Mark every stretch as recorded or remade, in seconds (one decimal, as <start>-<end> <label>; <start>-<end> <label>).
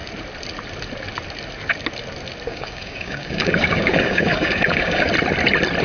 0.0-2.5 recorded; 2.5-5.1 remade; 5.1-5.8 recorded